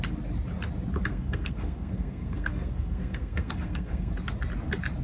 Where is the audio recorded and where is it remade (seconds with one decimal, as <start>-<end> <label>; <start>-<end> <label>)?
0.0-1.1 recorded; 1.1-4.1 remade; 4.1-5.0 recorded